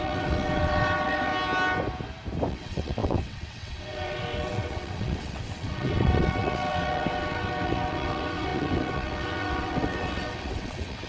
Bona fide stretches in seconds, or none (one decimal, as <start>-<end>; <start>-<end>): 1.3-2.5